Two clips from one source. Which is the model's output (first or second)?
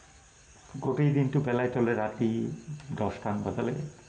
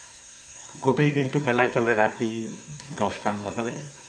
second